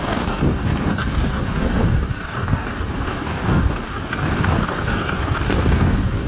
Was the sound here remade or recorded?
remade